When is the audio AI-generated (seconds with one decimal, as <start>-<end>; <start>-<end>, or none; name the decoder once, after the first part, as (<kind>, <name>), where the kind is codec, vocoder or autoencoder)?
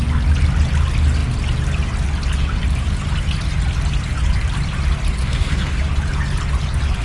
5.2-5.7 (codec, SNAC)